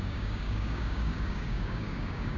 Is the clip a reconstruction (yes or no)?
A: yes